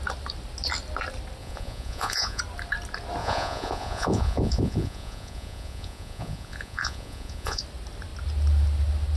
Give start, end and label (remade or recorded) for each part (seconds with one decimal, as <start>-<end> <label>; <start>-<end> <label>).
0.0-1.4 recorded; 1.4-2.4 remade; 2.4-3.2 recorded; 3.2-7.6 remade; 7.6-9.2 recorded